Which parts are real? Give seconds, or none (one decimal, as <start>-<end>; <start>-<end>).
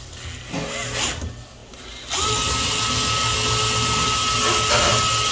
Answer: 0.0-5.3